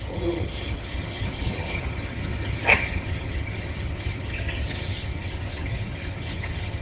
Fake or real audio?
fake